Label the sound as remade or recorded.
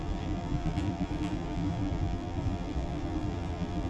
remade